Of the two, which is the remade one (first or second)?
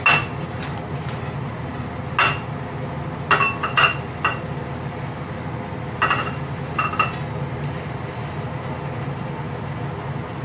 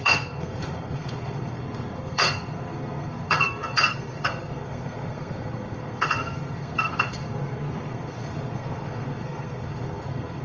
second